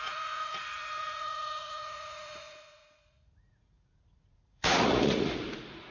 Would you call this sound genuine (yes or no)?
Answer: no